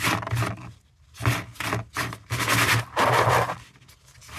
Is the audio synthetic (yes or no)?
no